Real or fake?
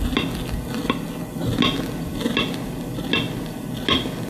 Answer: real